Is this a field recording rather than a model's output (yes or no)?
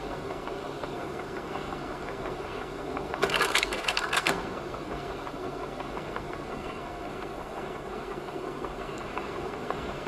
no